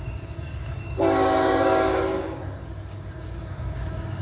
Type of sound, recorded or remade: remade